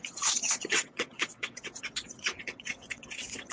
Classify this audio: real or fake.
fake